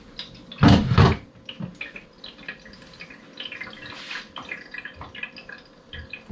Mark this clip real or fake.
real